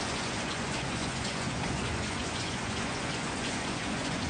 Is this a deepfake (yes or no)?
yes